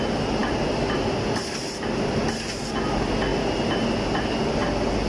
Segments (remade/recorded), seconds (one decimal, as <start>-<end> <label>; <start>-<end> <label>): 0.0-5.1 recorded